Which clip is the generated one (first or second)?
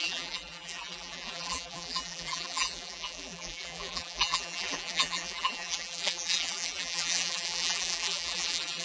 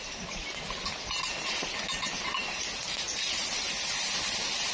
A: first